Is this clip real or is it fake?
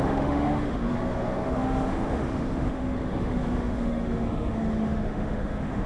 fake